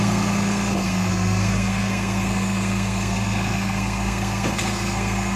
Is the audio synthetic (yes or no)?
yes